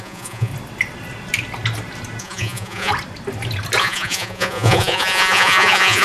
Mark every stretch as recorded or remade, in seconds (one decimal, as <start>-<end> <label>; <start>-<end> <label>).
0.0-0.5 remade; 0.5-2.2 recorded; 2.2-2.9 remade; 2.9-3.8 recorded; 3.8-6.0 remade

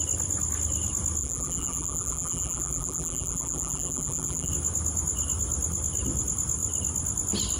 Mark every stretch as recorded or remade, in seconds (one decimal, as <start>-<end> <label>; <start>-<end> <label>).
0.0-1.2 recorded; 1.2-4.5 remade; 4.5-7.6 recorded

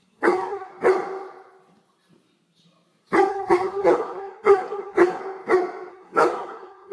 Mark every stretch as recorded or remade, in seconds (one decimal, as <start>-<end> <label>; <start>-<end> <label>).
0.0-0.7 remade; 0.7-3.3 recorded; 3.3-5.2 remade; 5.2-5.9 recorded; 5.9-6.9 remade

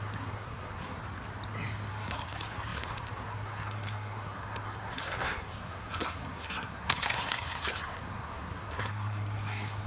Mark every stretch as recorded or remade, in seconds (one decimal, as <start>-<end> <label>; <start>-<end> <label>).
0.0-1.0 remade; 1.0-1.9 recorded; 1.9-9.9 remade

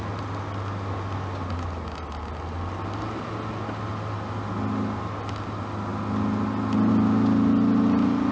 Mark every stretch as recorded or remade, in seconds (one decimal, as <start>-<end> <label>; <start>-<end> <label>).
0.0-8.3 recorded

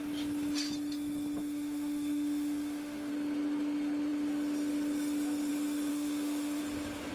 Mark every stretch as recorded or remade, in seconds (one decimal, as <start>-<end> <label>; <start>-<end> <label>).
0.0-1.4 recorded; 1.4-3.1 remade; 3.1-5.9 recorded; 5.9-6.6 remade; 6.6-7.1 recorded